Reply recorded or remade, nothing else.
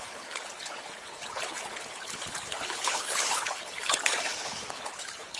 remade